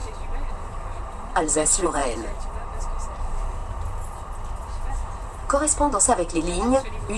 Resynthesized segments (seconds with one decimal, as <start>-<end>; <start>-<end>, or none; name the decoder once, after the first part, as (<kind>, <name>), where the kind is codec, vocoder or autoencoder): 0.5-3.6 (vocoder, BigVGAN v2); 4.9-7.2